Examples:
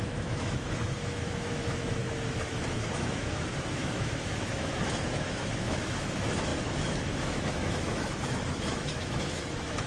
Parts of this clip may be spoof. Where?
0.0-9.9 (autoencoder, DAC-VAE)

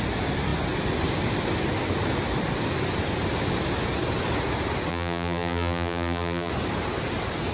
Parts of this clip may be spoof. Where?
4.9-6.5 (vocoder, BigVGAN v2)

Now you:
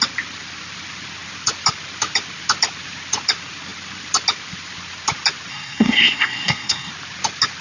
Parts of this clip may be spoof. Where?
5.5-6.9 (codec, SNAC)